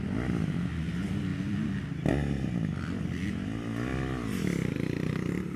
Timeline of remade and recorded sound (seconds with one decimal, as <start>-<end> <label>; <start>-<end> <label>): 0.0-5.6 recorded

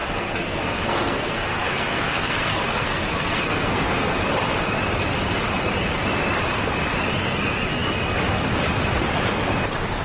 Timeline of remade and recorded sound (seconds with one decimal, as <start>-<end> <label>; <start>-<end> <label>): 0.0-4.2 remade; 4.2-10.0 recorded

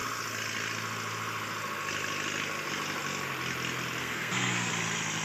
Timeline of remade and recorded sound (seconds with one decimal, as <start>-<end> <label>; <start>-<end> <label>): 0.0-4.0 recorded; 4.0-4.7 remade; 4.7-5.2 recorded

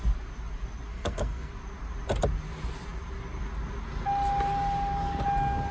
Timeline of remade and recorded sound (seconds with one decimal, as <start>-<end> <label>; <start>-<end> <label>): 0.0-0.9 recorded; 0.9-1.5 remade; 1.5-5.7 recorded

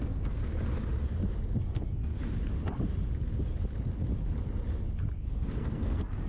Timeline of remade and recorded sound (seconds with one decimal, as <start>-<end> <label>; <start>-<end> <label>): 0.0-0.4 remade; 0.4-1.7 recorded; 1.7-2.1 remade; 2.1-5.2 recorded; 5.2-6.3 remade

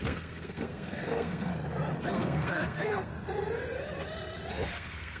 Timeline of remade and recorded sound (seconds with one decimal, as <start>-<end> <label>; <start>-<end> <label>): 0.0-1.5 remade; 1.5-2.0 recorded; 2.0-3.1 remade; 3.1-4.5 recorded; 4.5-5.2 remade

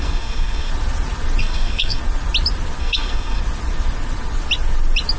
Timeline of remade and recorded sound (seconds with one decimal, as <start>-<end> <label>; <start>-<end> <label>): 0.0-0.7 remade; 0.7-1.4 recorded; 1.4-2.0 remade; 2.0-2.8 recorded; 2.8-3.4 remade; 3.4-5.2 recorded